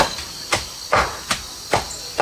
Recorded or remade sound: recorded